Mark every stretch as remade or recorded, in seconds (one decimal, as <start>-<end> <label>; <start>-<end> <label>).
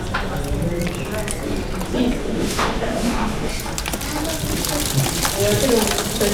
0.0-2.2 recorded; 2.2-3.5 remade; 3.5-6.3 recorded